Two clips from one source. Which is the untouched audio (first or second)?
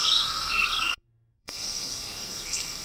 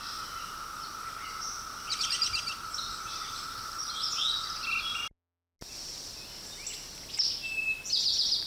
second